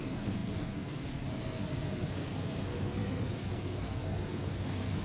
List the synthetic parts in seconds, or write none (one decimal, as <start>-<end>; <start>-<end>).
0.0-5.0